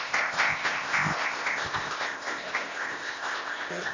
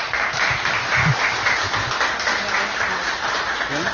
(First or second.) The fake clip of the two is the first